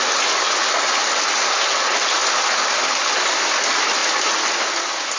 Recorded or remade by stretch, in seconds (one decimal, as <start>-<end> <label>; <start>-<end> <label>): 0.0-5.2 recorded